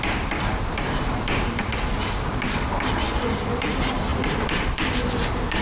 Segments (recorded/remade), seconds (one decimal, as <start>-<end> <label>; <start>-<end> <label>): 0.0-1.7 remade; 1.7-2.9 recorded; 2.9-5.6 remade